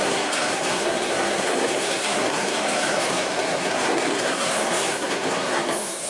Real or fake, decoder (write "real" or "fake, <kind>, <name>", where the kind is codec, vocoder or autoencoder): fake, codec, SNAC